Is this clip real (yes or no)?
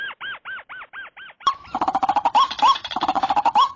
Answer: no